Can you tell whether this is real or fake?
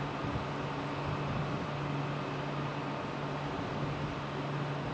real